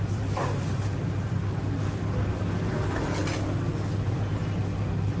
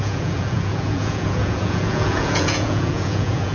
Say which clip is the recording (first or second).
first